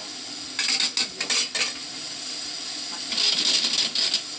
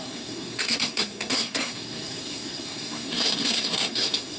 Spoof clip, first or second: second